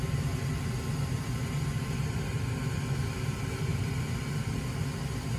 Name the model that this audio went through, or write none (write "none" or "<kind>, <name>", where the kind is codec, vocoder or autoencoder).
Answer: none